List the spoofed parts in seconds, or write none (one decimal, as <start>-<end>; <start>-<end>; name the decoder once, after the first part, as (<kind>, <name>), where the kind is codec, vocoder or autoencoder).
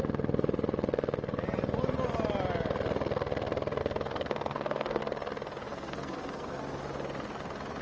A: 3.8-5.0 (codec, SNAC); 5.7-6.6